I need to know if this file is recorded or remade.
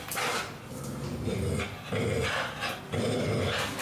recorded